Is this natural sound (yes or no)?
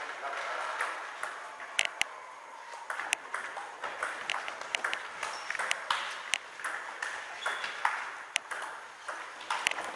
yes